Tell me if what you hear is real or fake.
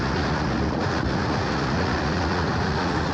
fake